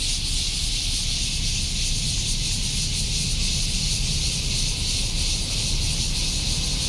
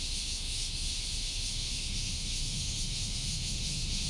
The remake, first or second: second